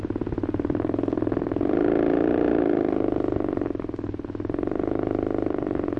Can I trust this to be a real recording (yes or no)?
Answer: yes